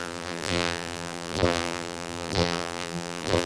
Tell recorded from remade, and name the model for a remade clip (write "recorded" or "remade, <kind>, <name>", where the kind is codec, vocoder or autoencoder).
remade, vocoder, BigVGAN v2